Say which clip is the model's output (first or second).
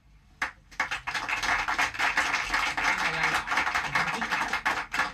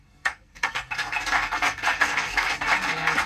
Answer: second